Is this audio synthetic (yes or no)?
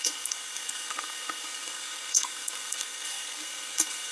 yes